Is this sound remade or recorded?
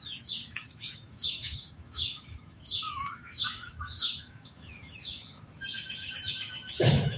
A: remade